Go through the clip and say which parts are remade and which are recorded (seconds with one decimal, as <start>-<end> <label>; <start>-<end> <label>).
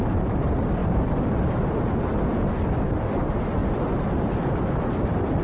0.0-0.8 recorded; 0.8-1.8 remade; 1.8-5.4 recorded